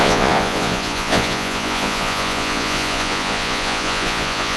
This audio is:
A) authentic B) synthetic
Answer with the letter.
B